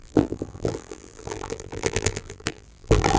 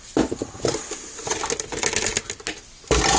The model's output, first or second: first